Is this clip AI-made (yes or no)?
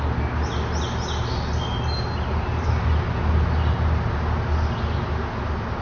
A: no